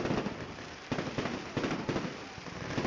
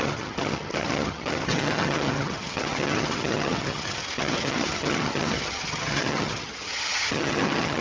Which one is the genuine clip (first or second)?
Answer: first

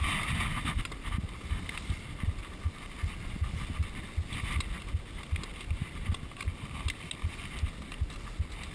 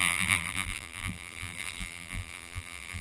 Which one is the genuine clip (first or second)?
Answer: first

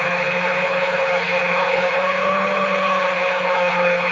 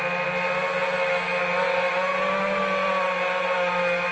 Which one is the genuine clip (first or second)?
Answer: second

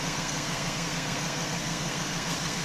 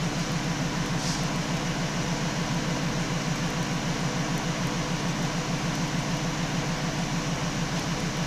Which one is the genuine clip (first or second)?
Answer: second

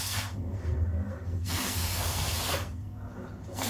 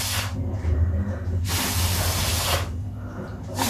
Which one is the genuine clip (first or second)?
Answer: second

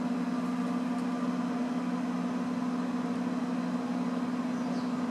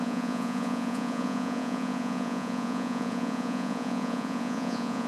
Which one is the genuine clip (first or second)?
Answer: first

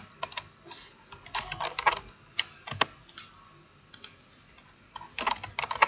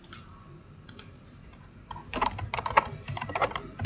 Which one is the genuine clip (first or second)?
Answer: first